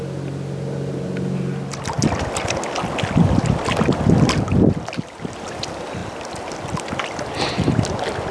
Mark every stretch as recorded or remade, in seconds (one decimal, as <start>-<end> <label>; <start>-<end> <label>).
0.0-8.3 recorded